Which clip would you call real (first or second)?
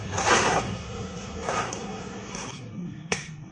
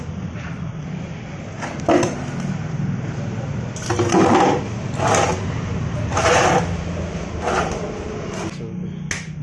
second